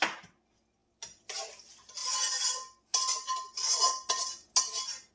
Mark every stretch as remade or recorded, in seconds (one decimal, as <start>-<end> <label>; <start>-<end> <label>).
0.0-5.1 recorded